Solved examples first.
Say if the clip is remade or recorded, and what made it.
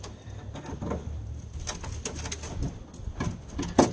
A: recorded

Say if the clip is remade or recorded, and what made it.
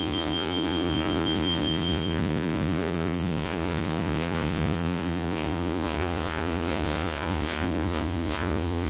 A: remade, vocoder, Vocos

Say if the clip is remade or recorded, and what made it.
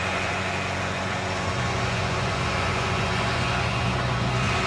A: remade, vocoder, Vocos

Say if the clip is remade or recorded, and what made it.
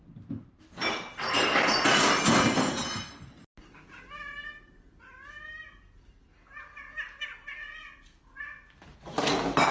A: recorded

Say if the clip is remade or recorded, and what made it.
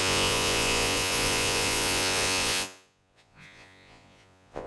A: remade, vocoder, Vocos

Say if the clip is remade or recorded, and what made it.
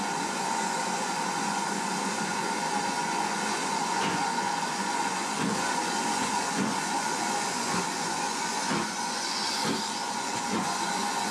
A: remade, vocoder, Vocos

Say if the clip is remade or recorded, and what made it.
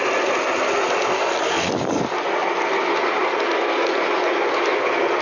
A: recorded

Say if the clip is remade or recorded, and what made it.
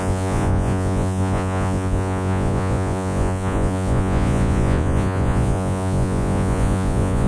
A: remade, vocoder, Vocos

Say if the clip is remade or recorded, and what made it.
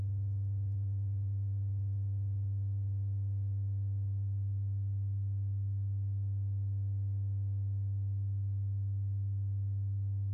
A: recorded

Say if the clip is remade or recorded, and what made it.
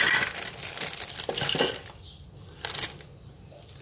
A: recorded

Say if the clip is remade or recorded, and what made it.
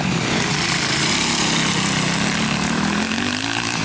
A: recorded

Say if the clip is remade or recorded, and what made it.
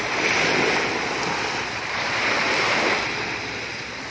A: recorded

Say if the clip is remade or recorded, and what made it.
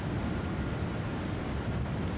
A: recorded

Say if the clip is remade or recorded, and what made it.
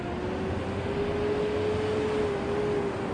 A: recorded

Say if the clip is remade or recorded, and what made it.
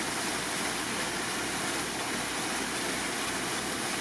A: recorded